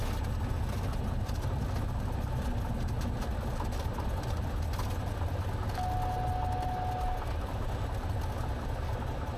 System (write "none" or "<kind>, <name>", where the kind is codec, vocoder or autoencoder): none